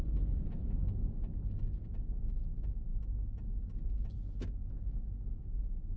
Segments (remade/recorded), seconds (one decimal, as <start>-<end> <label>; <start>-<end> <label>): 0.0-6.0 recorded